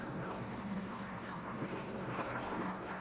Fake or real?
fake